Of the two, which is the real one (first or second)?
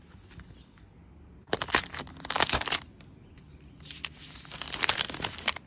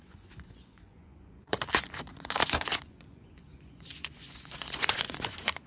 first